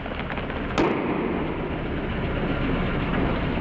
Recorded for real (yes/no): yes